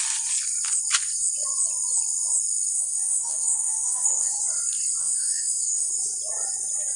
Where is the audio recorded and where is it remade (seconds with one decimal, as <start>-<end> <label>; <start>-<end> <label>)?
0.0-2.7 recorded; 2.7-4.4 remade; 4.4-5.0 recorded; 5.0-5.9 remade; 5.9-7.0 recorded